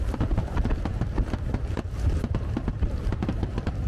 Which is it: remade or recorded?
remade